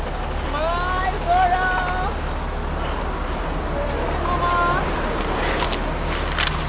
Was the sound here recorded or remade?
recorded